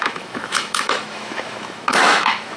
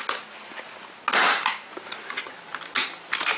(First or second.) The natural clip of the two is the second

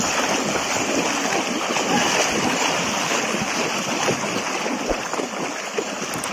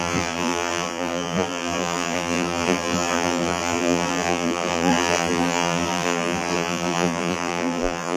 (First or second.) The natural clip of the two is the first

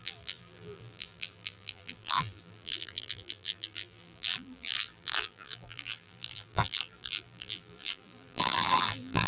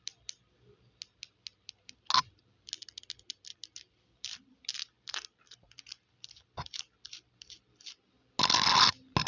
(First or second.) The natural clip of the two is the second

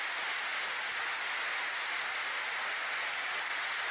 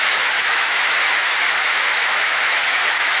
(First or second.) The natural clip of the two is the first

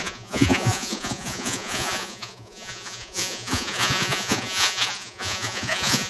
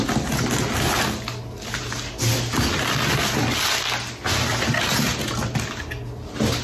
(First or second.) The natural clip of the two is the second